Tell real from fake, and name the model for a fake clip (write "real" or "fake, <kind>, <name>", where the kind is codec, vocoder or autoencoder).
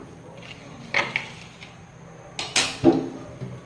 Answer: real